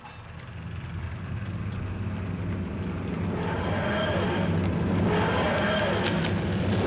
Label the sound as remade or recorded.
recorded